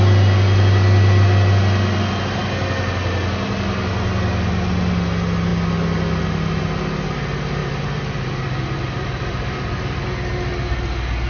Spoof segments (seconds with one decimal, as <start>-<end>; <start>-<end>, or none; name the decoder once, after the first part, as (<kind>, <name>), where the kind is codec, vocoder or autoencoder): 7.6-10.0 (vocoder, BigVGAN v2)